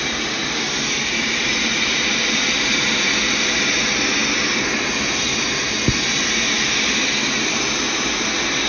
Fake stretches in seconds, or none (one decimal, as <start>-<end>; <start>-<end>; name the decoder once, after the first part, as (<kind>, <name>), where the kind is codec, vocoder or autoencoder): none